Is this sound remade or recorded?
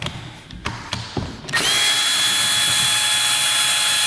recorded